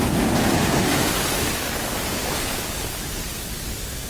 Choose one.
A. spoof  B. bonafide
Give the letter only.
A